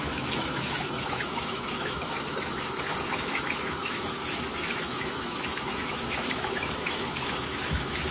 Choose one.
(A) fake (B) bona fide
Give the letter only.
A